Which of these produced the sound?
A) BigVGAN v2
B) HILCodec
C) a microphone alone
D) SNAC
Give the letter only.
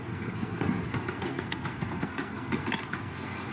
D